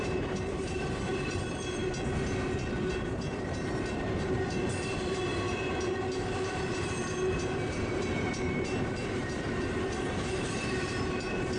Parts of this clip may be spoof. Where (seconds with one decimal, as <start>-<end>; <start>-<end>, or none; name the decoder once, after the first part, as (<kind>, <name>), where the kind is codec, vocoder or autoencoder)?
0.0-1.8 (vocoder, BigVGAN v2); 2.9-5.3; 6.5-11.6